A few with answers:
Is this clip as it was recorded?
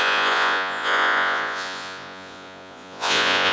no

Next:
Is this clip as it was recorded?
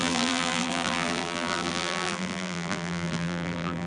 no